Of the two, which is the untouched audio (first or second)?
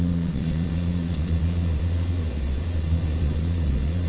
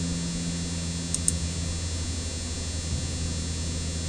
second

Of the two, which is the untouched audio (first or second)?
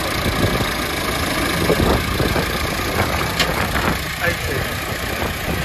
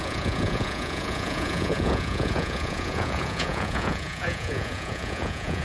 first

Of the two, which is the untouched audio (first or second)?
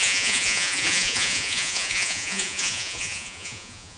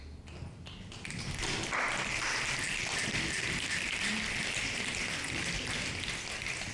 second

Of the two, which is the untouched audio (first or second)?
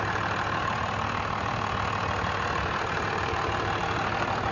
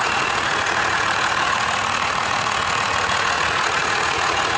first